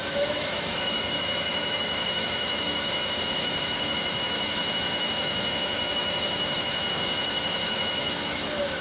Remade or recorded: remade